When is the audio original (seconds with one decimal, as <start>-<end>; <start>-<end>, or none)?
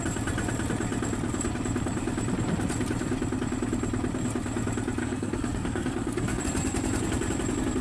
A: 0.0-5.0; 6.4-7.8